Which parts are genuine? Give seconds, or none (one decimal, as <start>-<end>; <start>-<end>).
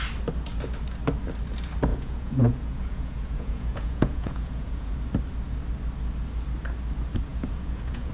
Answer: 0.0-1.9; 5.0-7.3